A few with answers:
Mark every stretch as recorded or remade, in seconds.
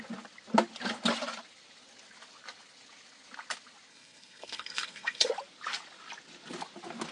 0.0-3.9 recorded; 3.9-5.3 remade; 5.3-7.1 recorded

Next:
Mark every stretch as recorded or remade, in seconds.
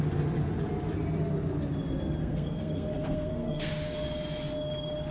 0.0-2.2 recorded; 2.2-3.7 remade; 3.7-5.1 recorded